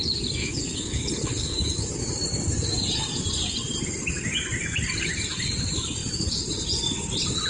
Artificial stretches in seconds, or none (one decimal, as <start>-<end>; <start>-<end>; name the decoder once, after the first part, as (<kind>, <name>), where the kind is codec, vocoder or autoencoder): 0.4-1.9 (codec, HILCodec)